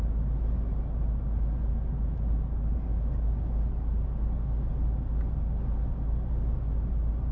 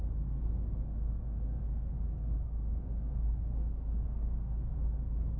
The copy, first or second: second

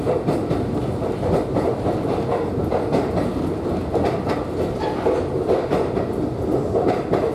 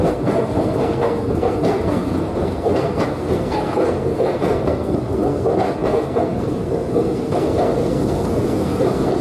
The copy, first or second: second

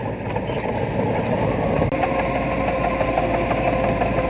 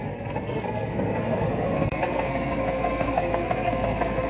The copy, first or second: second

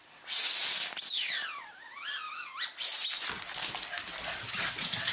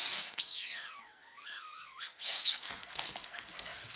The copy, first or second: second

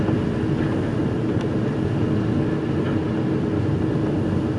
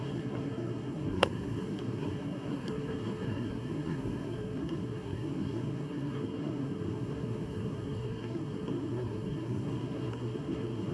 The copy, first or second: second